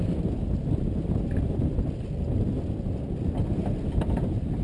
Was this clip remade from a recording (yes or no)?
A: no